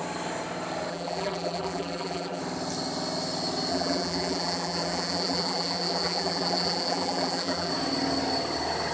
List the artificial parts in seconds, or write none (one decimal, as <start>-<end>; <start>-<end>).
0.9-2.4; 3.7-7.7